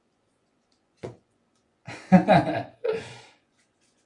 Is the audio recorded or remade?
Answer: remade